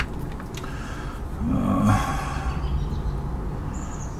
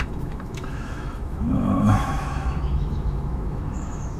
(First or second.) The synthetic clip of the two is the second